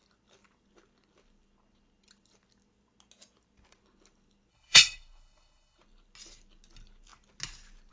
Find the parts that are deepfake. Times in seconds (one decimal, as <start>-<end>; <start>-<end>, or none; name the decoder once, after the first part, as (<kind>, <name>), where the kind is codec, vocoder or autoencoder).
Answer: 4.5-5.8 (codec, HILCodec)